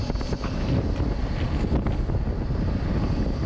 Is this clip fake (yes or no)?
no